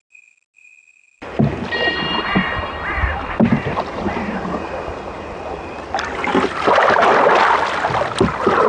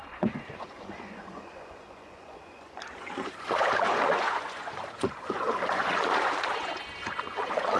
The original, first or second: first